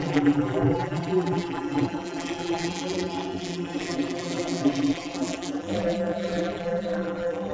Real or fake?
fake